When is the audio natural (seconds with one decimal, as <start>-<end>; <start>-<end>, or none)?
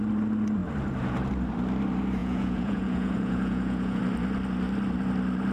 0.0-2.2; 4.0-5.5